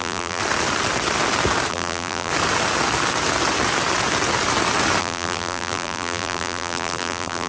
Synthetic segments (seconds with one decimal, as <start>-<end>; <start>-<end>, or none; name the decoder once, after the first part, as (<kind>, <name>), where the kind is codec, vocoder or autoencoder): 0.0-0.4 (vocoder, BigVGAN v2); 1.7-2.3; 5.0-7.5